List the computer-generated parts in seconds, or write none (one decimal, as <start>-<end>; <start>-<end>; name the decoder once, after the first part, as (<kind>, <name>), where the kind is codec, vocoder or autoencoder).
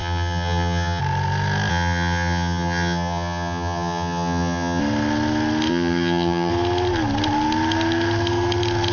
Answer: 0.0-1.0 (vocoder, HiFi-GAN); 1.7-4.8; 5.7-6.5